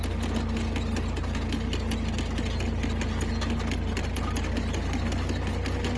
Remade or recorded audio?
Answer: recorded